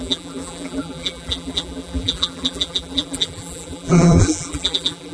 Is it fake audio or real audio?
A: fake